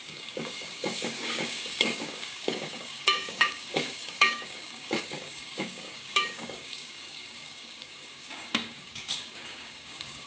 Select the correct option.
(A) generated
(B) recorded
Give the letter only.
A